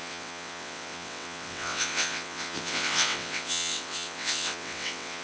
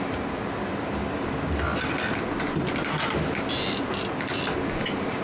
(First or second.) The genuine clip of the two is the second